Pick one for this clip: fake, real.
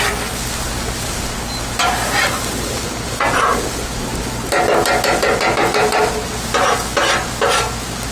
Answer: real